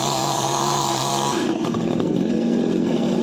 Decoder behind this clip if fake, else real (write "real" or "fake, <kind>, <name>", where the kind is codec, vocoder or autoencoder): fake, codec, SNAC